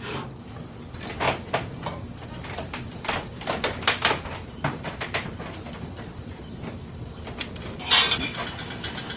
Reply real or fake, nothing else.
real